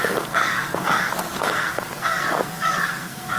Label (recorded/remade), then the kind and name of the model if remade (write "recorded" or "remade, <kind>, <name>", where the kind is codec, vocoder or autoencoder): remade, codec, SNAC